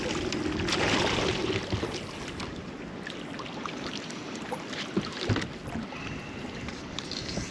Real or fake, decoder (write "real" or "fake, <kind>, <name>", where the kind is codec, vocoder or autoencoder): real